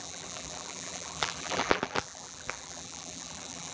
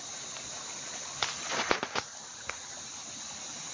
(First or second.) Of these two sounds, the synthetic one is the first